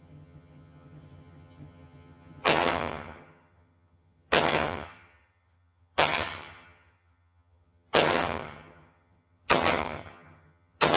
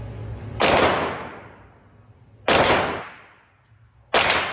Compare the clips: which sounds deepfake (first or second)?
first